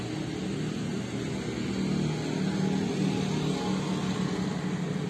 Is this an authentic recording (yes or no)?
yes